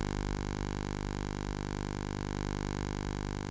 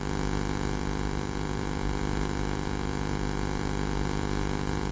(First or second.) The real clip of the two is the first